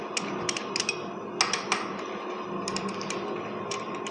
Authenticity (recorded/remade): recorded